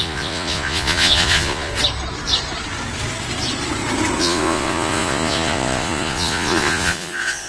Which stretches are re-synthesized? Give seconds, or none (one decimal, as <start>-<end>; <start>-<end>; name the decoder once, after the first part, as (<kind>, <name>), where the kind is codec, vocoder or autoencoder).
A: 0.0-1.7 (vocoder, Vocos); 4.2-7.5